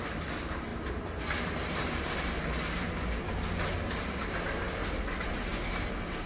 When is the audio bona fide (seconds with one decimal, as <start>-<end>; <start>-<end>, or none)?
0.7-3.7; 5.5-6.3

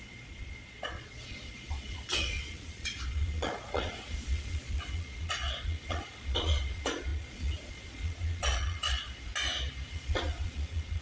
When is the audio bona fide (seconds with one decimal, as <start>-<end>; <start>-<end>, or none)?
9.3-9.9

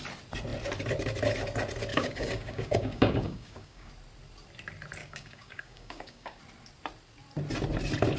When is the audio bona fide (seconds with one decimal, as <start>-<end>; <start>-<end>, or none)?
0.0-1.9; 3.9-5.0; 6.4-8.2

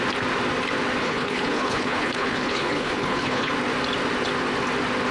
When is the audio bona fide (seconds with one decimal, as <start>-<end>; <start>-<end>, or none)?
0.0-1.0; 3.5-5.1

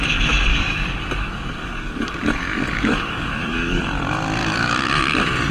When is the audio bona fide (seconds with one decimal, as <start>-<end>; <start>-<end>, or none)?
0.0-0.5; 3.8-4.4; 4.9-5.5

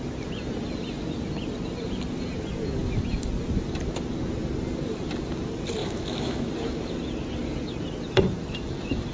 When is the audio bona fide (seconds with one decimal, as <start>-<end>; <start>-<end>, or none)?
0.0-5.8; 6.5-9.1

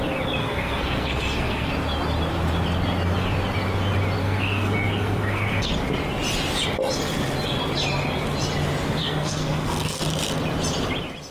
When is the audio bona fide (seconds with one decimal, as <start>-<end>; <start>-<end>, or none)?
0.0-0.4; 1.7-4.2; 5.7-9.0; 10.0-11.3